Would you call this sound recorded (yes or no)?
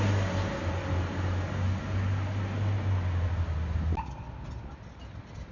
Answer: yes